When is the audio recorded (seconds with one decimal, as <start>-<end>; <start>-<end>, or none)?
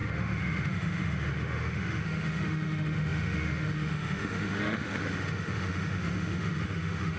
none